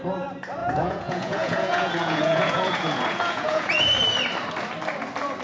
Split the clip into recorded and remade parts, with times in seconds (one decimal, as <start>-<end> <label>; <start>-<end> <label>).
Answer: 0.0-0.6 recorded; 0.6-3.8 remade; 3.8-5.4 recorded